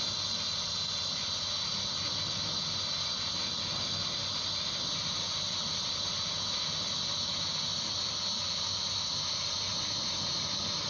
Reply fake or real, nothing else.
real